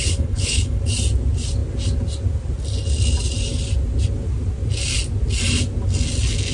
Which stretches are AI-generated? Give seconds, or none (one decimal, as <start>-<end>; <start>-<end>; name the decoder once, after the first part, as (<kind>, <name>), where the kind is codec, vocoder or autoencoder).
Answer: 0.0-0.8 (codec, HILCodec)